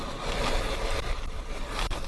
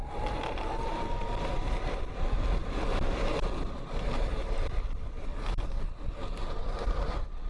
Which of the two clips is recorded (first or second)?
first